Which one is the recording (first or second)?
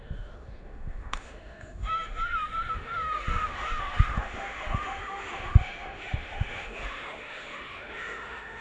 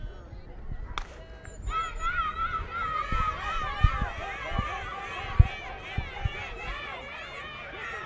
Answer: second